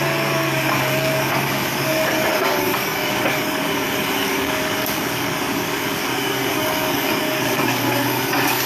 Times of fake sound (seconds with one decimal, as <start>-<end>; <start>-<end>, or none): 0.0-8.7

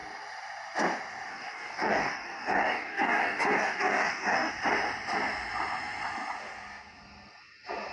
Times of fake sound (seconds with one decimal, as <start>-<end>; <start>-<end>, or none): 1.3-4.5